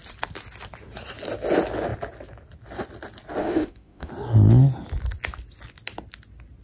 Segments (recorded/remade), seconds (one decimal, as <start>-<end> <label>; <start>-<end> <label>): 0.0-3.4 recorded; 3.4-4.1 remade; 4.1-6.6 recorded